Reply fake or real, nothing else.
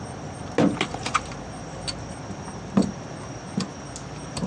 real